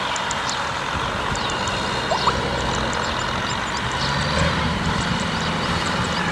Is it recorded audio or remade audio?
recorded